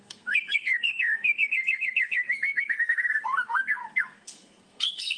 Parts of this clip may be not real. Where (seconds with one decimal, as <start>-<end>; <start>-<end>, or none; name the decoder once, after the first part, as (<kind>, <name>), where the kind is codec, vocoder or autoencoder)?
0.0-5.2 (codec, SNAC)